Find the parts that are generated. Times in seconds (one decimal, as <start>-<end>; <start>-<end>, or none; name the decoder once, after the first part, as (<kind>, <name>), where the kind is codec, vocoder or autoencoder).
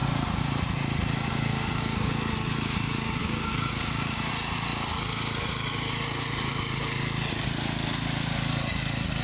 1.5-2.1 (codec, DAC); 3.2-4.3